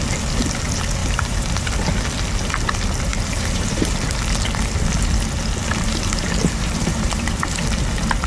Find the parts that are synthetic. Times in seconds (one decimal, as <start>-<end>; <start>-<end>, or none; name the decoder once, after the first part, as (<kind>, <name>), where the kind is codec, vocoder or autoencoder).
1.0-1.7 (vocoder, BigVGAN v2); 3.1-4.1; 5.6-7.6